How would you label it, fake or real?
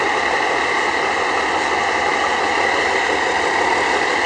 real